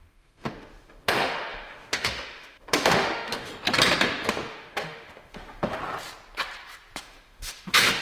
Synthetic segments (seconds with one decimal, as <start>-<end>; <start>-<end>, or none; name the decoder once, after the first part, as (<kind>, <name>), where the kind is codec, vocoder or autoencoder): 0.0-3.5 (autoencoder, DAC-VAE); 4.3-5.8; 7.0-8.0